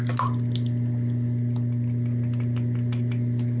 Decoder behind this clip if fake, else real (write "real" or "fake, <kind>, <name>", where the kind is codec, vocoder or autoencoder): real